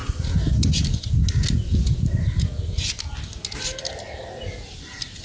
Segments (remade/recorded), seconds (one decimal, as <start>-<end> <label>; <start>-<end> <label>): 0.0-5.2 recorded